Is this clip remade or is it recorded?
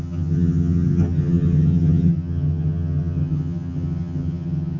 remade